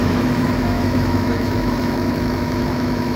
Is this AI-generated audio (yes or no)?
yes